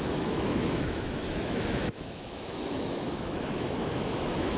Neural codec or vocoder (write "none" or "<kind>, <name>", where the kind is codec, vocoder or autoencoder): autoencoder, DAC-VAE